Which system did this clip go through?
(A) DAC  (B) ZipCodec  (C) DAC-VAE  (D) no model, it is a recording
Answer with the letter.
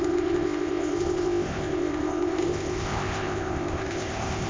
B